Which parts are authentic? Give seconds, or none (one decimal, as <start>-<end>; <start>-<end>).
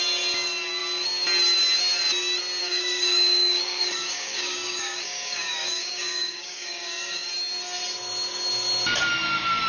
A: 0.0-2.6; 7.3-9.7